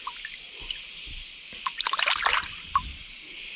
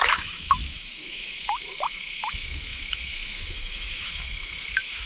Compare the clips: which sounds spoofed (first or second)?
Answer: second